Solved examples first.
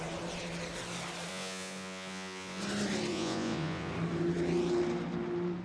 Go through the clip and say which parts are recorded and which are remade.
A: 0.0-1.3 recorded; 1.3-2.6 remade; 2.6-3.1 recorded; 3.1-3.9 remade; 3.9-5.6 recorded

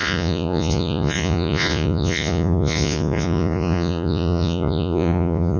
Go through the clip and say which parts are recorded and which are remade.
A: 0.0-5.6 remade

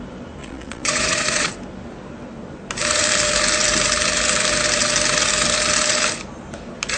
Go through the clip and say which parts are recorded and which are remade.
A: 0.0-0.4 recorded; 0.4-1.5 remade; 1.5-7.0 recorded

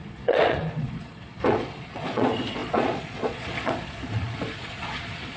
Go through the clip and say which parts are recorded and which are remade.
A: 0.0-5.4 remade